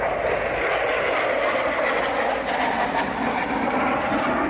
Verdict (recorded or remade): recorded